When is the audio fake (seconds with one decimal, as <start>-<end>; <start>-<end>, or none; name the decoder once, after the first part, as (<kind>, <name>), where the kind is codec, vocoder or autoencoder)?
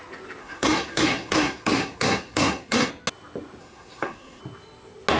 0.4-2.9 (codec, SNAC); 3.6-4.4